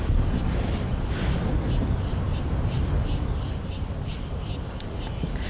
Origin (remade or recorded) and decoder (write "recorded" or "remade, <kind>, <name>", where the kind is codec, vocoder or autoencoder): recorded